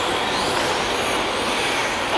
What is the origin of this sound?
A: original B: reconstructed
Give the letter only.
A